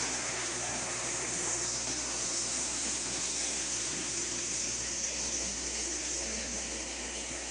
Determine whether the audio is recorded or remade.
remade